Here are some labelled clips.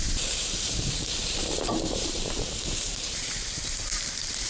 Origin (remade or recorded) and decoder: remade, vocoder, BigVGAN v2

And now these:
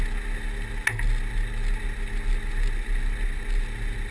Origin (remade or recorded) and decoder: recorded